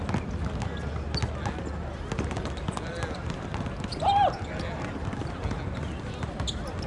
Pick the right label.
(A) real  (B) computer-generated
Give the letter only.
A